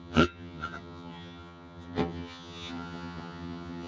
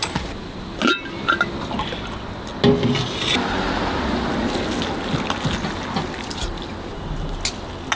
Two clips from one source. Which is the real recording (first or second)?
second